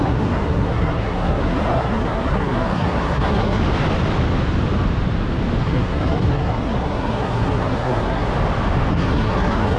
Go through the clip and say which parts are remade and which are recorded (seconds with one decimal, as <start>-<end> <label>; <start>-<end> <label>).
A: 0.0-3.6 remade; 3.6-5.6 recorded; 5.6-8.3 remade; 8.3-8.9 recorded; 8.9-9.8 remade